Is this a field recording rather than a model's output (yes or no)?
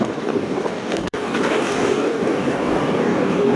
no